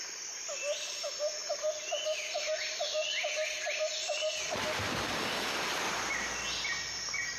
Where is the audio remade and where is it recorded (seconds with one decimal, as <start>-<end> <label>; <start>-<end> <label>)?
0.0-7.4 recorded